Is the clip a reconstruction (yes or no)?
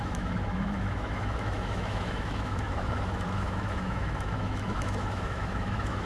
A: yes